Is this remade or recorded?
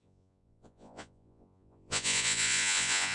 remade